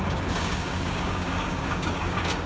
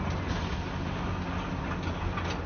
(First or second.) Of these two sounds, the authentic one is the second